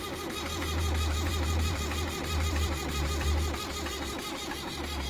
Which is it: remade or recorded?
remade